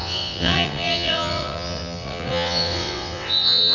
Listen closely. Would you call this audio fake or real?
fake